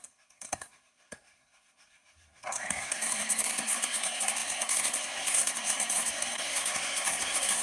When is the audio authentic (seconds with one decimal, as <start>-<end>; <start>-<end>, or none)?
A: none